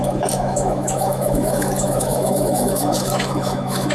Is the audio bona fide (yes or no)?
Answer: no